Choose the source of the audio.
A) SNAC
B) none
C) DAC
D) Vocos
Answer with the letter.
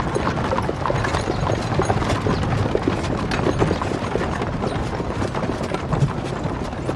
B